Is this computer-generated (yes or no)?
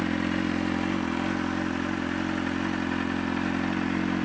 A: no